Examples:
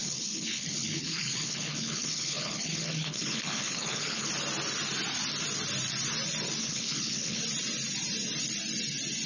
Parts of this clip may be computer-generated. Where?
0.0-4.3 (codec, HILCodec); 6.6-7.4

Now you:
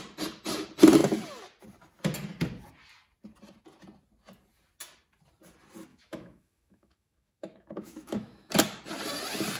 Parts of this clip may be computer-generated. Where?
5.9-8.5 (autoencoder, DAC-VAE)

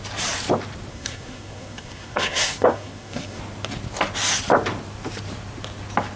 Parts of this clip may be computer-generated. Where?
0.9-3.4 (codec, SNAC)

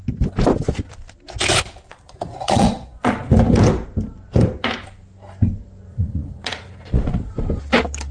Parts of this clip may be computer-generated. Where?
1.9-3.3 (vocoder, Vocos); 5.9-7.3

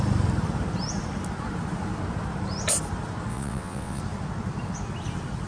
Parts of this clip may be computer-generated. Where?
3.3-4.0 (vocoder, WaveNeXt)

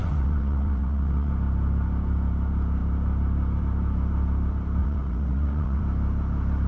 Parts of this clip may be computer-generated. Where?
0.0-1.3 (vocoder, WaveNeXt); 4.8-5.8

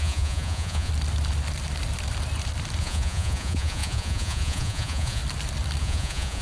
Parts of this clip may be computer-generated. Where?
0.0-0.9 (vocoder, Vocos); 2.8-5.2; 5.8-6.4